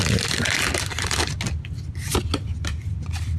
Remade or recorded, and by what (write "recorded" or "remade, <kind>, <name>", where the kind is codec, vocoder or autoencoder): recorded